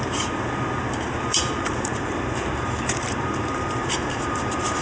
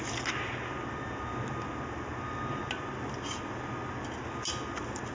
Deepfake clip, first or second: first